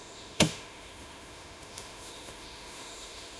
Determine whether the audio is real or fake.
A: fake